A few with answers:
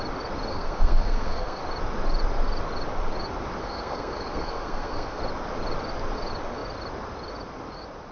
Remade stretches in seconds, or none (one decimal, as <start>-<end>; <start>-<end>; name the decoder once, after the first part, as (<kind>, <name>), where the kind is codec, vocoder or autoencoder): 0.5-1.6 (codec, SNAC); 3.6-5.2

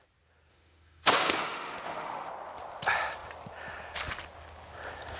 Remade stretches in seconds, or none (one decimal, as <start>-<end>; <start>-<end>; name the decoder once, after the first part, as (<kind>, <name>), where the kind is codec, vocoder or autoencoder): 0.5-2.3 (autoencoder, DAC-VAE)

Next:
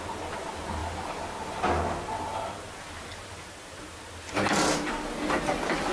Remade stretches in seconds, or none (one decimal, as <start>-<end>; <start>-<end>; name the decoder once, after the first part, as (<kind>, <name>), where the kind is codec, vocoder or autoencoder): none

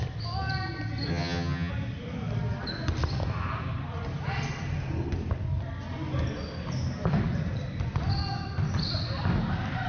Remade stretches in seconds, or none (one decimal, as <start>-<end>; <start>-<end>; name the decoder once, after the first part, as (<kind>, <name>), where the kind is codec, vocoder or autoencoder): 1.1-1.7 (vocoder, HiFi-GAN)